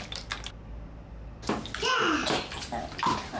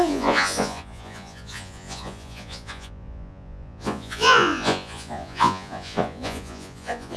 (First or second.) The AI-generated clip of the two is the second